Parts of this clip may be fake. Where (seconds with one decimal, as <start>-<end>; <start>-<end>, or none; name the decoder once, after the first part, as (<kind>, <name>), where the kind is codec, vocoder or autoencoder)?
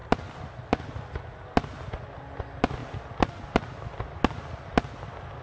none